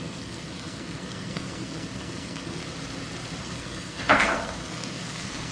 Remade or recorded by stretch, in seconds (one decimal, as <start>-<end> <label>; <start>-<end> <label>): 0.0-2.6 remade; 2.6-3.4 recorded; 3.4-5.5 remade